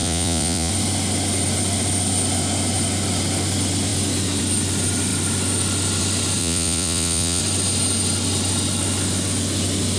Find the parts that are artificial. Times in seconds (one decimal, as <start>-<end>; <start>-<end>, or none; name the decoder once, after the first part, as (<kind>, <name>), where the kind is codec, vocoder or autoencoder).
0.0-0.7 (vocoder, Vocos); 6.4-7.4